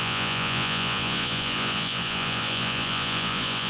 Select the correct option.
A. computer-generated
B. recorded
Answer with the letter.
A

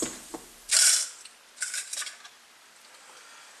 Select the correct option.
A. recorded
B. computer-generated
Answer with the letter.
A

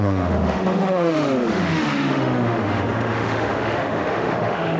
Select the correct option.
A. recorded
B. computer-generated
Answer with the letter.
B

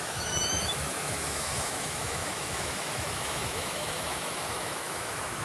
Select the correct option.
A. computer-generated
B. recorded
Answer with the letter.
A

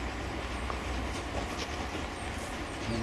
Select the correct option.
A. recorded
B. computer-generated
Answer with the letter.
A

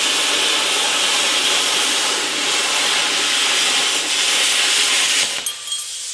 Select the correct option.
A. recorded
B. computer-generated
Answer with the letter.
A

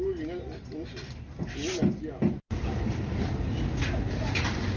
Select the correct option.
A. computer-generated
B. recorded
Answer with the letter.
B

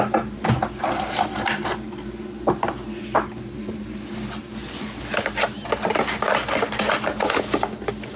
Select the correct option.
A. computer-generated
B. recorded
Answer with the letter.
B